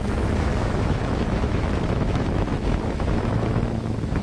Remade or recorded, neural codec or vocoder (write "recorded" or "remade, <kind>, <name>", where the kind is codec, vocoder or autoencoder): remade, autoencoder, DAC-VAE